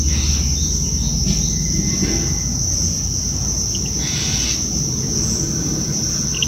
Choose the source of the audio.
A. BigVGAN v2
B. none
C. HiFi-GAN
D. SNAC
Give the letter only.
B